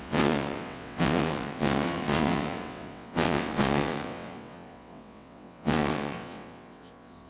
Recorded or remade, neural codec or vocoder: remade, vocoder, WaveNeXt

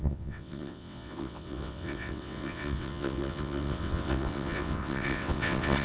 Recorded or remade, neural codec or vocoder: remade, vocoder, WaveNeXt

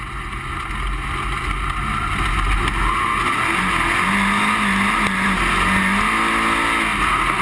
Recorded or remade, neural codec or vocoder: recorded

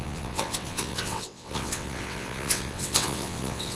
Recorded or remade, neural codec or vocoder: remade, vocoder, WaveNeXt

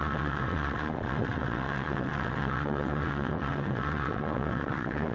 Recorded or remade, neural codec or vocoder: remade, vocoder, WaveNeXt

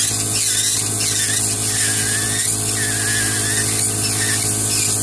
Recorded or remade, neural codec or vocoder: recorded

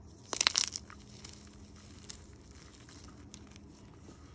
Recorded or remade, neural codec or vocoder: recorded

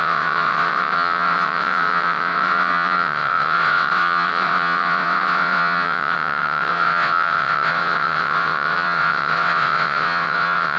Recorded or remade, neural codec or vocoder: remade, vocoder, WaveNeXt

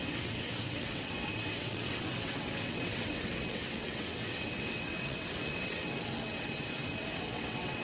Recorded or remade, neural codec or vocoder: remade, vocoder, WaveNeXt